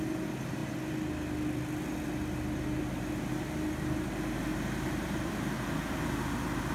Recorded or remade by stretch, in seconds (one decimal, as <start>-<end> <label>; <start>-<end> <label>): 0.0-6.7 recorded